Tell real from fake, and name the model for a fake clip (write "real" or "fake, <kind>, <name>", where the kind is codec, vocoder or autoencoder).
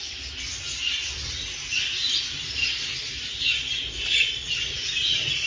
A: real